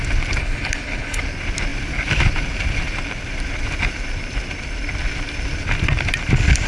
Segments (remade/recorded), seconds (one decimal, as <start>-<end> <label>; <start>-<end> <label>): 0.0-0.4 recorded; 0.4-1.2 remade; 1.2-6.7 recorded